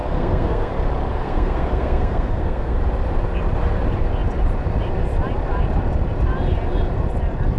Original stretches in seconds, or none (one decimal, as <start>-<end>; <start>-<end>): 0.7-1.1; 2.8-7.6